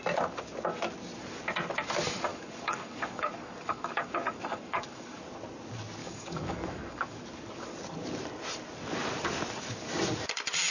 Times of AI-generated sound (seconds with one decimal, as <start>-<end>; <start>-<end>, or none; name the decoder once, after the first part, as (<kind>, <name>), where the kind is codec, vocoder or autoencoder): 2.3-5.2 (codec, DAC); 6.0-7.2